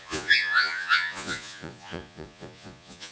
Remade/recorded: remade